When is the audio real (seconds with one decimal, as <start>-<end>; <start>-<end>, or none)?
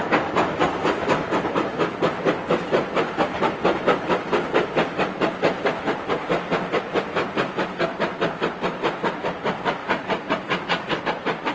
0.0-9.8; 11.0-11.5